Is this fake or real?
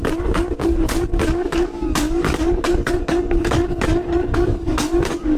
fake